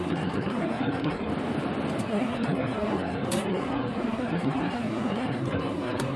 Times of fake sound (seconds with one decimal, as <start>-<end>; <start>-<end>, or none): 0.0-1.3; 2.0-6.2